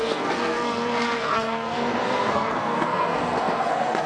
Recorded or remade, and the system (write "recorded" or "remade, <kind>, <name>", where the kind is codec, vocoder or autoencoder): remade, codec, SNAC